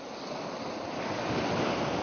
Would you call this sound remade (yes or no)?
no